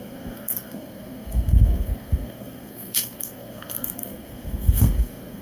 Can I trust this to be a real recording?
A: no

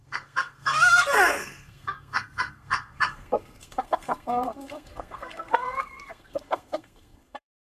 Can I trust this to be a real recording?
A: no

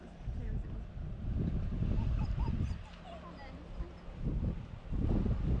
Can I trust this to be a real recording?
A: yes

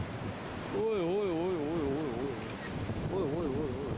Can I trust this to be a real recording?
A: yes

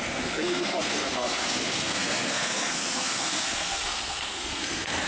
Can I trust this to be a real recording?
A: no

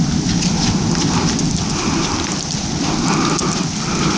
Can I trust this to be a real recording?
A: yes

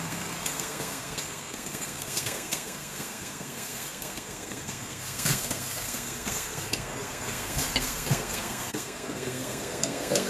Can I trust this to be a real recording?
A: no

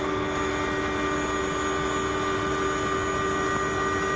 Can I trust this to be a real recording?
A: yes